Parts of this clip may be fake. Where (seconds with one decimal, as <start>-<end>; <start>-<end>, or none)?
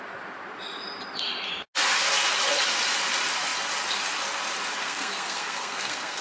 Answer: 4.8-6.2